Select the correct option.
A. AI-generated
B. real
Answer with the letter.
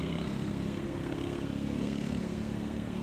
A